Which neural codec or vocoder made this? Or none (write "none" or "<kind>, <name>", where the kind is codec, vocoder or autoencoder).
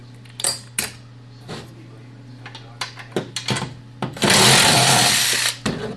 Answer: none